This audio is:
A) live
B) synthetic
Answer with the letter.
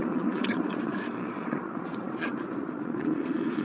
B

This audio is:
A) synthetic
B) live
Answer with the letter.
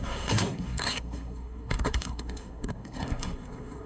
A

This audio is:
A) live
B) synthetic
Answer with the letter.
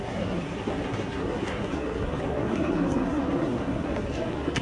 B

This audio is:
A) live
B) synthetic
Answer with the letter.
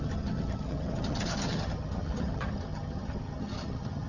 B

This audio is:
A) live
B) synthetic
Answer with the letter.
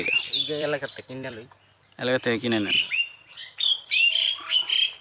B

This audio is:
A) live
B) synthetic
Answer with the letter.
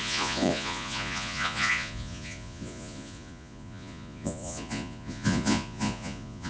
B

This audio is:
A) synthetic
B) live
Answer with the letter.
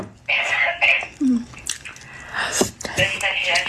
B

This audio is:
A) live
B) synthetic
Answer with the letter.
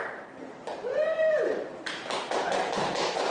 B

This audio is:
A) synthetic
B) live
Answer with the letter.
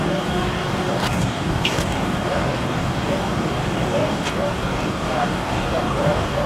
A